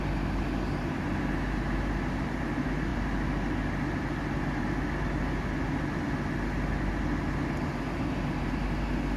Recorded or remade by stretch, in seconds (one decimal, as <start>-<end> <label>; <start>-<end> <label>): 0.0-9.2 recorded